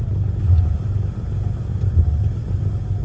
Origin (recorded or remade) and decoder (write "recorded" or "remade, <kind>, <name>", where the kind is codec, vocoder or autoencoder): recorded